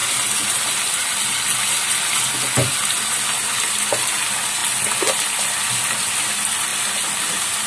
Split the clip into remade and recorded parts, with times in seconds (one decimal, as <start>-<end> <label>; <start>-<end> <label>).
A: 0.0-7.7 recorded